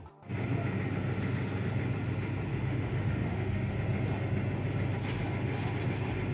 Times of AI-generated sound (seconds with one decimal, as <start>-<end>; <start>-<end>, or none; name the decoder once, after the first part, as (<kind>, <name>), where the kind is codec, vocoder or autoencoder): 2.5-3.7 (autoencoder, DAC-VAE)